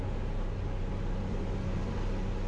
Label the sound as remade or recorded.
recorded